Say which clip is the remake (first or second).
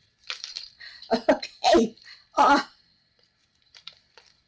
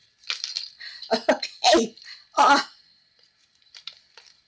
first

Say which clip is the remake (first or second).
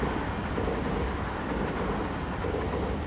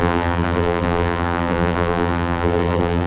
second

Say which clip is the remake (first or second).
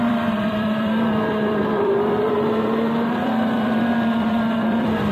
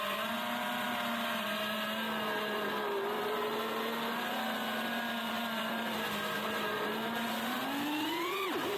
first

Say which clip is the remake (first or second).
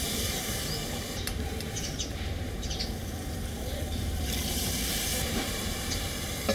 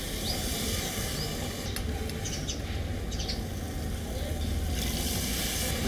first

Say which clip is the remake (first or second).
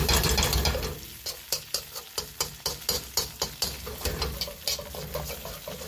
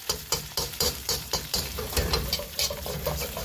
second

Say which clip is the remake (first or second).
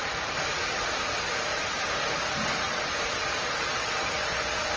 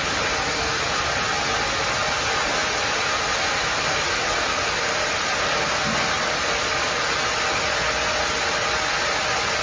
first